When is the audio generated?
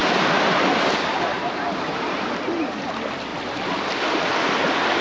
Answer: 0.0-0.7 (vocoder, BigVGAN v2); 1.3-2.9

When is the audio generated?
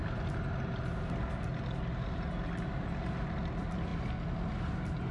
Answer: none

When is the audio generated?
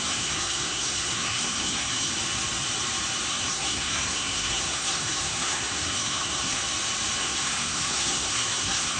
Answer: 0.0-2.1 (codec, SNAC); 3.3-6.6; 7.2-9.0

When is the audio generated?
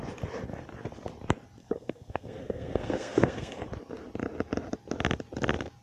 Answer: 1.6-3.6 (codec, SNAC)